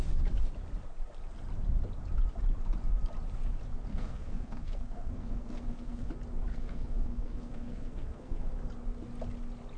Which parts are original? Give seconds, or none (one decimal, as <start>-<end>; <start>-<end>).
0.0-3.9; 6.1-6.5; 8.5-9.8